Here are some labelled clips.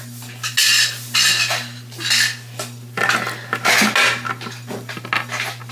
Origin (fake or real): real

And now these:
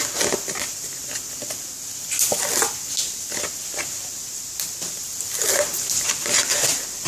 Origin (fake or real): real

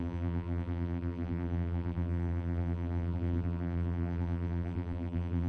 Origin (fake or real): fake